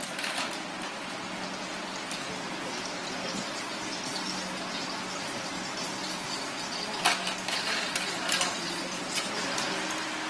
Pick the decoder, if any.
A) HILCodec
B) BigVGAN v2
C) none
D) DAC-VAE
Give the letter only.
C